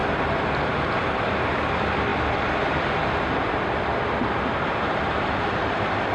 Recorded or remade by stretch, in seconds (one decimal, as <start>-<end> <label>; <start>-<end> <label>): 0.0-1.3 remade; 1.3-2.1 recorded; 2.1-6.1 remade